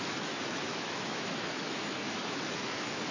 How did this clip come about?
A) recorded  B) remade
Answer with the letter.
B